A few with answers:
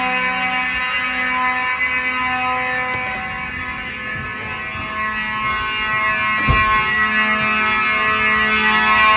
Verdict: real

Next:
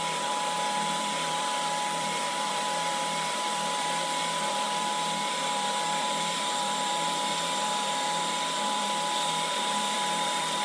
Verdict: fake